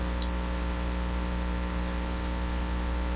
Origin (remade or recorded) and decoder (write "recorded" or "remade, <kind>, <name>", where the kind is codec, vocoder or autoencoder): recorded